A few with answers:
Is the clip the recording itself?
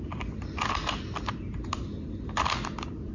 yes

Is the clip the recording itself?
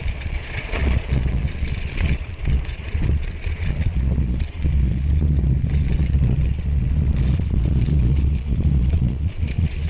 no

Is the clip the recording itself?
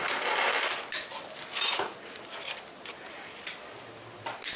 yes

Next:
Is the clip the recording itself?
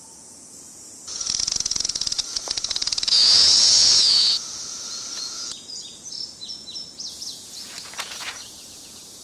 no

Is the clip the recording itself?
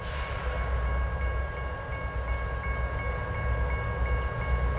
yes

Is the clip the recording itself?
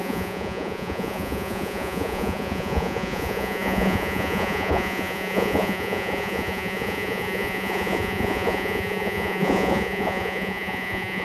no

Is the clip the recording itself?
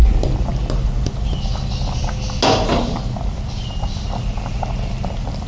yes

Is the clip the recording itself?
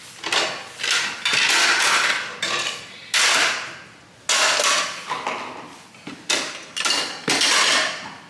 yes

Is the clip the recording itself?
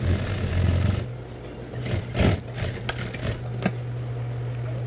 yes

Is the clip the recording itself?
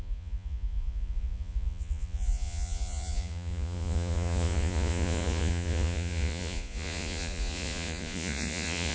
no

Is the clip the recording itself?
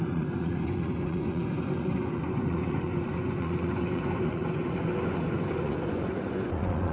no